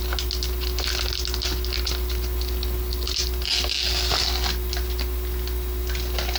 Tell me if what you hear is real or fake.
real